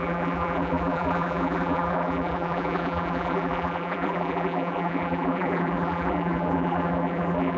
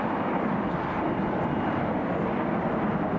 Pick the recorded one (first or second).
second